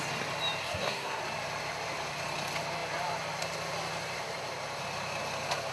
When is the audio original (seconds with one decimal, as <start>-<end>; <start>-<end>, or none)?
0.0-0.6; 1.2-5.7